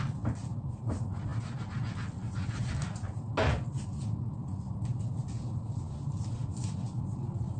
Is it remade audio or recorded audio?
recorded